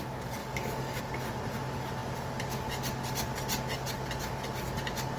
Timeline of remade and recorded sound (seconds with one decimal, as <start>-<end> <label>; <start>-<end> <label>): 0.0-0.4 recorded; 0.4-1.0 remade; 1.0-5.2 recorded